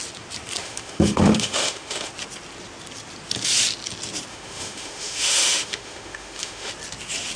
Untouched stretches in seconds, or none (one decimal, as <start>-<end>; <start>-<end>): 0.0-0.6; 2.1-4.3; 6.7-7.4